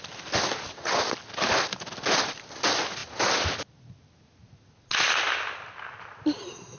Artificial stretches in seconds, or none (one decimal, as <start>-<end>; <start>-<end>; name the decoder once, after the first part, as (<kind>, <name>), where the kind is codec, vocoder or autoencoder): none